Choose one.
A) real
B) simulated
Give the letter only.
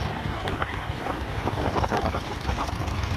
B